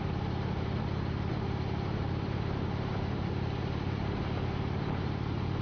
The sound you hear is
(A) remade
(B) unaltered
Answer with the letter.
A